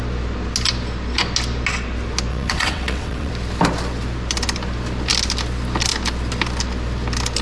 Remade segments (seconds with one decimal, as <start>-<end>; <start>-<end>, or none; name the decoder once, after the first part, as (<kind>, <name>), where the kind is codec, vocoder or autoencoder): 2.3-3.3 (vocoder, WaveNeXt)